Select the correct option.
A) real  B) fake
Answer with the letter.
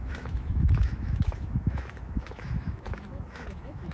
B